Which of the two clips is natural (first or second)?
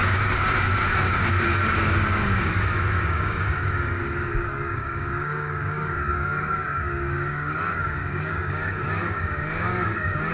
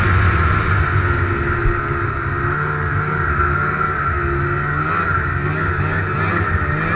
second